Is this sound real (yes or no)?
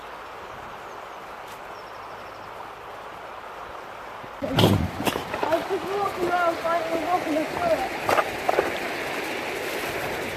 yes